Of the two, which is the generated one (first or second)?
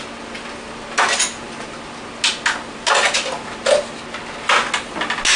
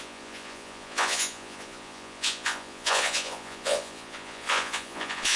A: second